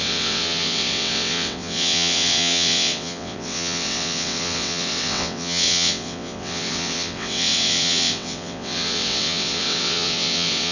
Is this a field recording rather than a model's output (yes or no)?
no